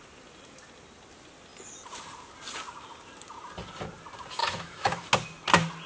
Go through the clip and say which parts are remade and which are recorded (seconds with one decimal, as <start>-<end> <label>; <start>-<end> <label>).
0.0-4.4 recorded; 4.4-5.1 remade; 5.1-5.9 recorded